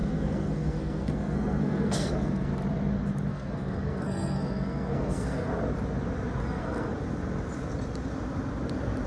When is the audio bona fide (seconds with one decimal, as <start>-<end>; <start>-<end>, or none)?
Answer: 2.5-3.3; 5.5-6.4; 6.9-9.1